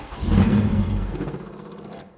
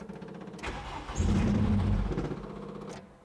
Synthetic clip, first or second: first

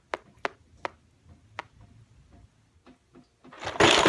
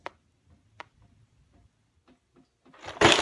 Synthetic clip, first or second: second